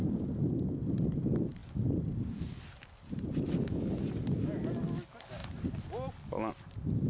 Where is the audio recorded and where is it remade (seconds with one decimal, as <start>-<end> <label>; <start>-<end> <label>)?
0.0-7.1 recorded